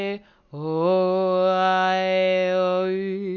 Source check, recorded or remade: recorded